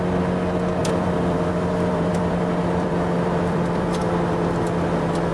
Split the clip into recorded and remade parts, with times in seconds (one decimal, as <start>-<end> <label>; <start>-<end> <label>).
0.0-0.8 recorded; 0.8-4.0 remade; 4.0-5.3 recorded